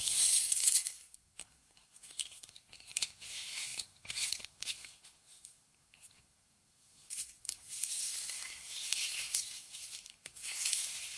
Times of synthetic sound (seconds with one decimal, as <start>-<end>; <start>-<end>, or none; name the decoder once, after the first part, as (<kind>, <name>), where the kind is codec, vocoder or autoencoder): 0.0-11.2 (codec, SNAC)